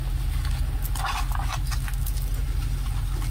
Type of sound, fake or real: real